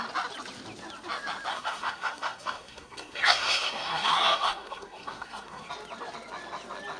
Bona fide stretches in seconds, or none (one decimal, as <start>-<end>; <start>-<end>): 0.0-1.5; 5.7-7.0